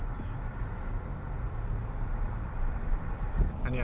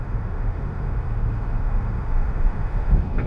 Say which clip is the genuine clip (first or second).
first